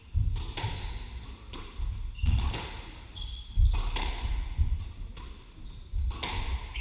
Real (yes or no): yes